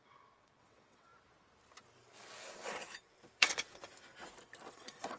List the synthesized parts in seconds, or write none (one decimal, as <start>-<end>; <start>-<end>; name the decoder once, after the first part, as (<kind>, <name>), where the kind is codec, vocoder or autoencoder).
0.0-1.1 (vocoder, WaveNeXt); 3.4-3.8; 4.7-5.2